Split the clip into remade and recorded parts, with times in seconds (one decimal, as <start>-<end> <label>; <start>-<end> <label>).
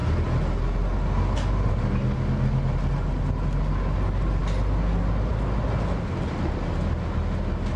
0.0-7.8 recorded